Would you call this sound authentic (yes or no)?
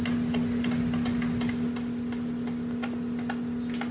yes